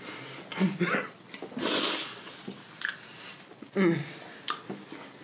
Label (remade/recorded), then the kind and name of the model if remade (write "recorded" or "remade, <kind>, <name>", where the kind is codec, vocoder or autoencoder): recorded